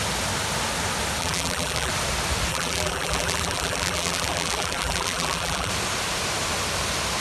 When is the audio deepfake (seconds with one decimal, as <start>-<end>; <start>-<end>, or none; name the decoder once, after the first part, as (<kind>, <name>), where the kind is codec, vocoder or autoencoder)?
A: 1.2-1.9 (vocoder, BigVGAN v2); 2.5-5.7